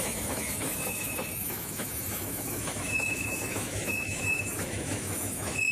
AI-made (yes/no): yes